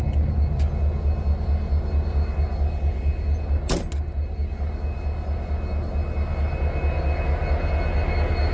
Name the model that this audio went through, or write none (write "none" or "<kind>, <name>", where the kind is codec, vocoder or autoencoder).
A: none